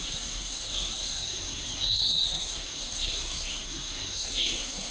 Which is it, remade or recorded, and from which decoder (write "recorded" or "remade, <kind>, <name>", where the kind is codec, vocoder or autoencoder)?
remade, codec, SNAC